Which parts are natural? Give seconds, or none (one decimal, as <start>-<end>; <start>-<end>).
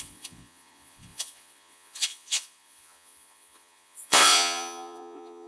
none